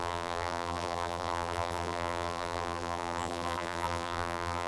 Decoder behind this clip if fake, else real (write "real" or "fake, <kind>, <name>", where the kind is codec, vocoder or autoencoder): fake, vocoder, BigVGAN v2